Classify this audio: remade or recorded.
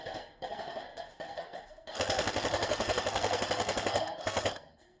remade